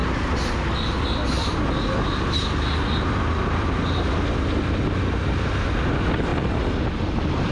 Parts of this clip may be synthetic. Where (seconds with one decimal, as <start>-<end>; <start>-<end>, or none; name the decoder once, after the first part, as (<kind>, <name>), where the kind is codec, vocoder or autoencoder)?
none